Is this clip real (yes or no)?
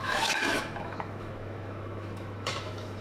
no